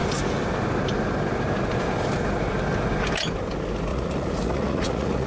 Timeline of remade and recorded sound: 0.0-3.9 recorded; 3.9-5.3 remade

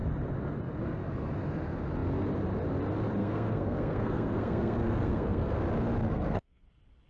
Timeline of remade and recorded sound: 0.0-3.2 recorded; 3.2-5.6 remade; 5.6-6.0 recorded; 6.0-6.6 remade; 6.6-7.1 recorded

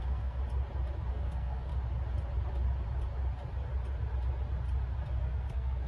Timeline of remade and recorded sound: 0.0-0.4 remade; 0.4-1.1 recorded; 1.1-1.7 remade; 1.7-5.2 recorded; 5.2-5.9 remade

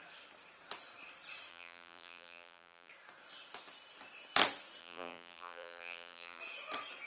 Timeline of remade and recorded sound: 0.0-1.5 recorded; 1.5-2.9 remade; 2.9-4.8 recorded; 4.8-6.4 remade; 6.4-7.1 recorded